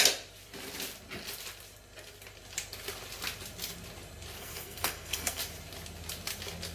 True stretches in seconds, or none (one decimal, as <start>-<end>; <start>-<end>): 0.0-4.4; 5.4-6.7